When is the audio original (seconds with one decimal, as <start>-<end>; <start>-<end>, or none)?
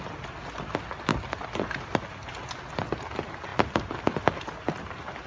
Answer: 0.0-5.3